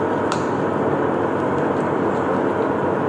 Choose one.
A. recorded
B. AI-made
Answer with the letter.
A